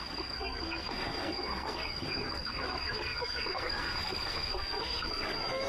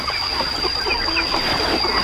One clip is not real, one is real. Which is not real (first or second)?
first